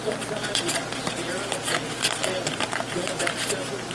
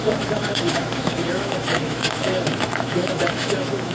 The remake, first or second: second